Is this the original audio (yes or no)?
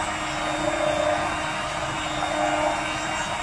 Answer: yes